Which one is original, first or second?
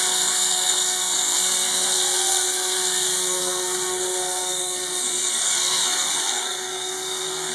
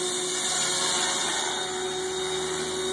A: second